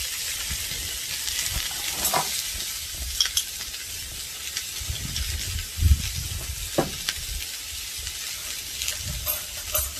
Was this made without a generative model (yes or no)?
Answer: yes